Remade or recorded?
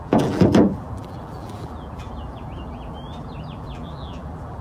remade